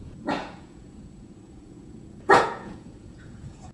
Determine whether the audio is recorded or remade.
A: remade